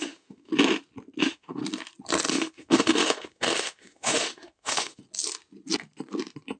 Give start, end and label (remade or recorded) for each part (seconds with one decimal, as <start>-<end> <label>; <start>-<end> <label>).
0.0-0.5 remade; 0.5-1.2 recorded; 1.2-1.6 remade; 1.6-2.3 recorded; 2.3-5.0 remade; 5.0-6.6 recorded